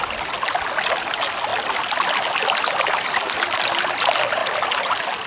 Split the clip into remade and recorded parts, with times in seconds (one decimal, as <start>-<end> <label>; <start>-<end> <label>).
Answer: 0.0-5.3 recorded